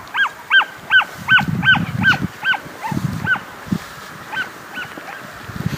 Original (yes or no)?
yes